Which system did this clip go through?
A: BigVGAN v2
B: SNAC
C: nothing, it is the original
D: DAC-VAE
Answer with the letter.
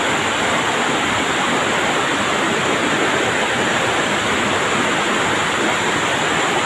C